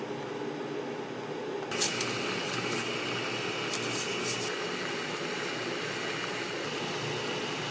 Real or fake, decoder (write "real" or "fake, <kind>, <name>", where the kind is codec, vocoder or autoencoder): real